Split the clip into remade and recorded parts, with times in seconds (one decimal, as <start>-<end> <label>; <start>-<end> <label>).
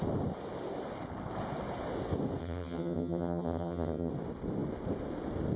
0.0-2.4 recorded; 2.4-4.1 remade; 4.1-5.6 recorded